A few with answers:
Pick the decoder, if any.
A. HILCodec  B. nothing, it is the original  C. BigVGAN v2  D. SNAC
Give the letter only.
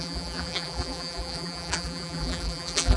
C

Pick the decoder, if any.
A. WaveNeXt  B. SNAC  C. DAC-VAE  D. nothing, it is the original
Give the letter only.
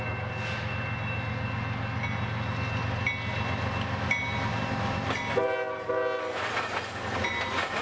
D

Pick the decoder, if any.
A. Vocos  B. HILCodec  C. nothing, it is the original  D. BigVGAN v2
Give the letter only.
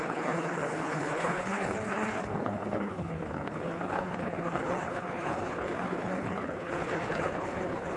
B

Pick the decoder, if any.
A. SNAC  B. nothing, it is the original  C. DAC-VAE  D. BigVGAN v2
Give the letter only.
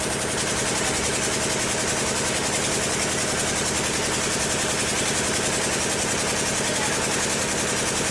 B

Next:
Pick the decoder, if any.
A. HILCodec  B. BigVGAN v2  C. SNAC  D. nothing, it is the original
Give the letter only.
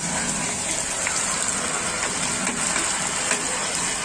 D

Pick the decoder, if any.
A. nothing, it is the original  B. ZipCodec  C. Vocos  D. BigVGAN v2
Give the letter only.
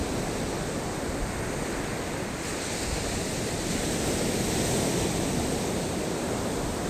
A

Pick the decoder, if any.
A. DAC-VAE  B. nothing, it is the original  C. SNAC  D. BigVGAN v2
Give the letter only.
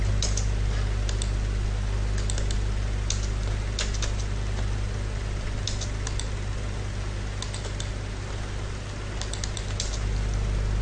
B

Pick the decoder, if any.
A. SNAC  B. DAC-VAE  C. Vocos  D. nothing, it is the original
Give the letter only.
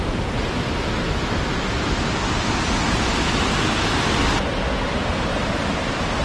D